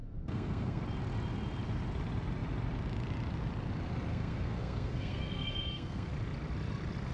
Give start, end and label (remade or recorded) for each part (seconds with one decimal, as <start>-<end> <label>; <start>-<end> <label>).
0.0-0.8 remade; 0.8-4.1 recorded; 4.1-6.1 remade; 6.1-7.1 recorded